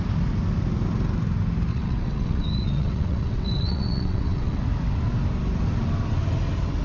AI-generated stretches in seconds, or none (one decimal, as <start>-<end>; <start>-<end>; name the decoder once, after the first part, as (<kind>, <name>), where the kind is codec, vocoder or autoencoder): 1.7-4.6 (vocoder, WaveNeXt)